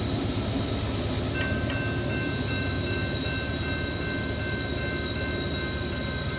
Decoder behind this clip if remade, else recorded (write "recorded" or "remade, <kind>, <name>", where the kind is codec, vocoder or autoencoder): recorded